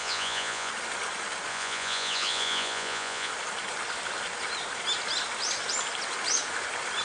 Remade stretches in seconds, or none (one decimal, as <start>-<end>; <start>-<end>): 0.0-0.7; 1.5-3.3